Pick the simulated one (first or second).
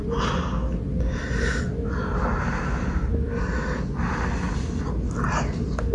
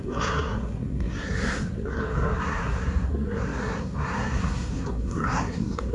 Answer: second